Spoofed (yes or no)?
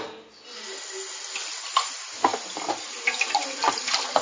no